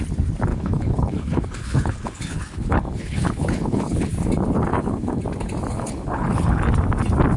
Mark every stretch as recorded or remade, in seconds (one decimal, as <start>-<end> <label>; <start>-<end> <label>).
0.0-0.5 recorded; 0.5-4.1 remade; 4.1-4.7 recorded; 4.7-5.2 remade; 5.2-5.7 recorded; 5.7-6.6 remade; 6.6-7.4 recorded